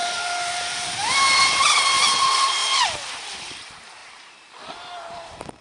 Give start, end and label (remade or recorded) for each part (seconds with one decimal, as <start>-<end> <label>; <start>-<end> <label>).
0.0-2.6 remade; 2.6-3.4 recorded; 3.4-5.6 remade